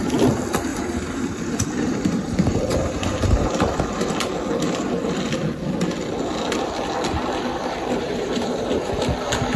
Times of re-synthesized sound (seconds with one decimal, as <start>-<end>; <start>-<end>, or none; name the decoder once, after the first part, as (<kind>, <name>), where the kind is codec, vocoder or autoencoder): 0.7-3.8 (vocoder, BigVGAN v2); 8.0-9.0